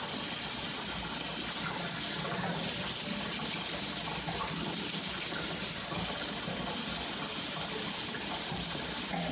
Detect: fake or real real